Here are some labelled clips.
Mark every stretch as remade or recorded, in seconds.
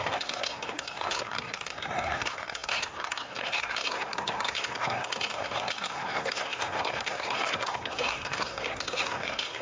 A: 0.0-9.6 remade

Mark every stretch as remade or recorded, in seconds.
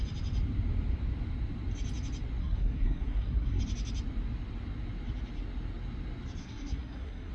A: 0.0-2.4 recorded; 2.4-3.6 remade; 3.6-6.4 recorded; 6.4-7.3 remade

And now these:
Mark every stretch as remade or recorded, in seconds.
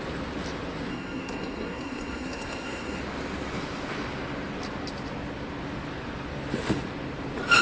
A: 0.0-0.9 recorded; 0.9-3.0 remade; 3.0-7.6 recorded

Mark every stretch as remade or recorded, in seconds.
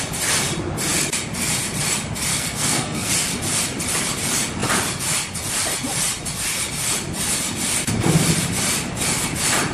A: 0.0-2.3 recorded; 2.3-3.1 remade; 3.1-9.7 recorded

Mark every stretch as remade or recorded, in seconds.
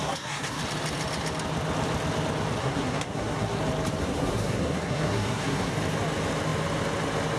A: 0.0-0.6 remade; 0.6-2.6 recorded; 2.6-3.6 remade; 3.6-4.0 recorded; 4.0-5.7 remade; 5.7-7.4 recorded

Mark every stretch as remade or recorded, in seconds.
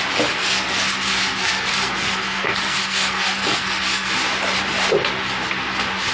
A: 0.0-0.4 recorded; 0.4-4.1 remade; 4.1-6.1 recorded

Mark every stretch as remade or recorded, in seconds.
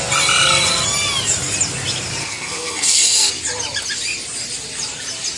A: 0.0-2.2 recorded; 2.2-3.3 remade; 3.3-5.4 recorded